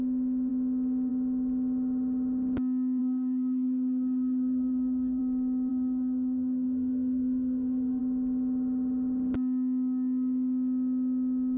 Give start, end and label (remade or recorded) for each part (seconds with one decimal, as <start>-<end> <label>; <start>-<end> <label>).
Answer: 0.0-3.0 recorded; 3.0-5.2 remade; 5.2-5.7 recorded; 5.7-8.0 remade; 8.0-11.6 recorded